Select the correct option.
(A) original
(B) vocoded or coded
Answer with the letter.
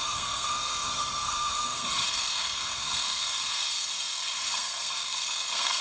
B